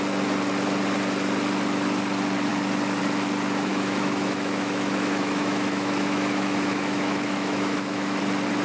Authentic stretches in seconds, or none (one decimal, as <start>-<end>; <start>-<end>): 0.0-3.7; 8.2-8.6